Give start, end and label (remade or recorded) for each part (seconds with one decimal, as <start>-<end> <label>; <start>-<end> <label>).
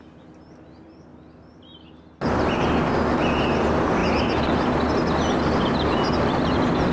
0.0-6.9 recorded